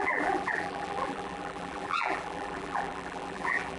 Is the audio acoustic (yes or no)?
no